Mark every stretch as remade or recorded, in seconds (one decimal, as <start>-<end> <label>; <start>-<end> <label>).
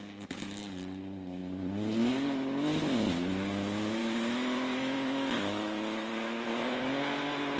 0.0-4.0 recorded; 4.0-6.8 remade; 6.8-7.6 recorded